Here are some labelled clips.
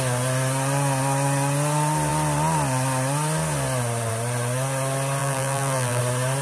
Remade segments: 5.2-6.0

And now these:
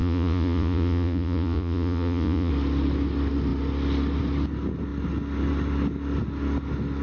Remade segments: 0.0-2.5

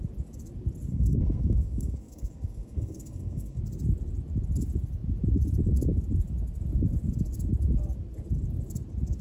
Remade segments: 0.9-3.6

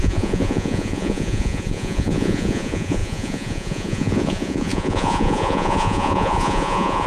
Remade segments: 0.0-7.1

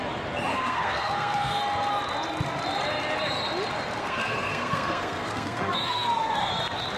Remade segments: 0.5-1.6; 4.0-6.5

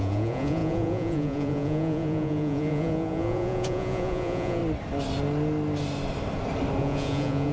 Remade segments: 0.0-4.6; 6.8-7.5

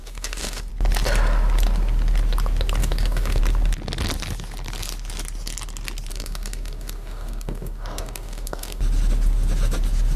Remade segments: 0.0-0.7; 2.8-3.4; 6.1-8.8